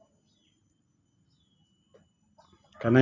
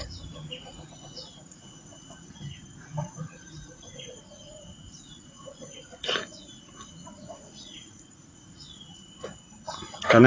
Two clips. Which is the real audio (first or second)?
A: first